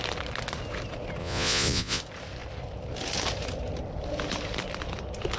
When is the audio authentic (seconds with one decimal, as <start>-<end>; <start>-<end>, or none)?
0.0-1.2; 2.0-5.4